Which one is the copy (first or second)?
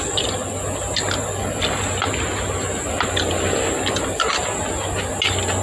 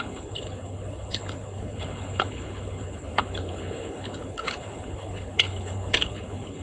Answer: second